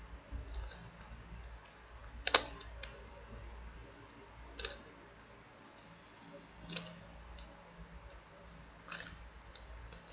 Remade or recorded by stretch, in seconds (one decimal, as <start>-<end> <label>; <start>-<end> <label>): 0.0-10.1 recorded